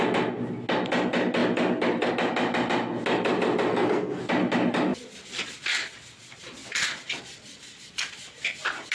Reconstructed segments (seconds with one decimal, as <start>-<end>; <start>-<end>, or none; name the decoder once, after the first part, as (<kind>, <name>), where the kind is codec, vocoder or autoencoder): 3.7-4.2 (codec, SNAC)